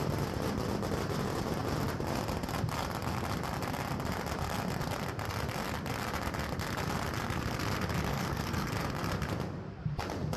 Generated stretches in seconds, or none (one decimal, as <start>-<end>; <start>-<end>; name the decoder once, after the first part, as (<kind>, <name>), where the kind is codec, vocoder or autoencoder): 8.1-8.7 (codec, SNAC)